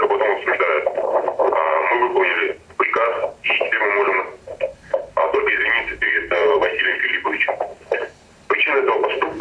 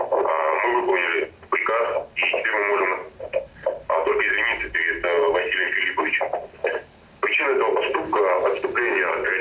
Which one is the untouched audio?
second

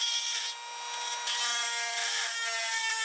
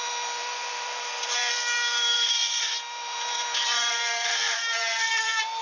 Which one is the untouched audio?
first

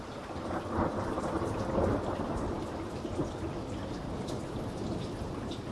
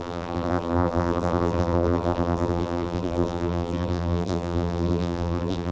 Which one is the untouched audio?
first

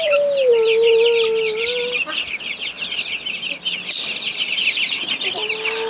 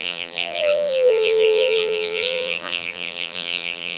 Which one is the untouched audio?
first